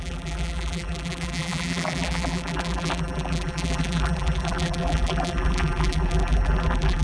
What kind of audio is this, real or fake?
fake